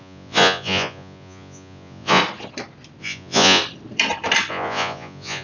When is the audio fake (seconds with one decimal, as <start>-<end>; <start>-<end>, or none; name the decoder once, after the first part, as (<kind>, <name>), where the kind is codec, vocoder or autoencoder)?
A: 0.0-2.2 (vocoder, Vocos); 3.0-3.6; 4.5-5.4